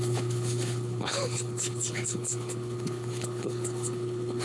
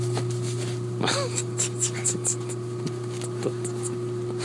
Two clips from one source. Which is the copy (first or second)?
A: first